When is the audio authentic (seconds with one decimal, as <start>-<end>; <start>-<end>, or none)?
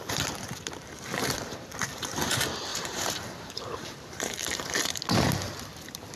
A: 0.0-0.8; 1.7-2.7; 5.0-6.2